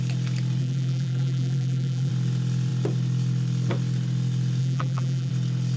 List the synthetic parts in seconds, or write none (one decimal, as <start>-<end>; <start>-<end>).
0.6-2.1; 4.6-5.3